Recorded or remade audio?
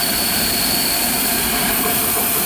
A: remade